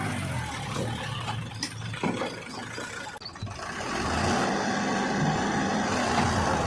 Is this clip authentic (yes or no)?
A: yes